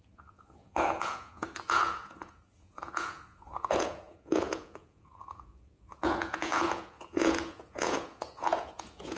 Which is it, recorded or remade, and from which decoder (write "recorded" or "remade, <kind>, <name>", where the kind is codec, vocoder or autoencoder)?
remade, vocoder, Vocos